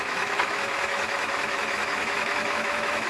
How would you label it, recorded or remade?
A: remade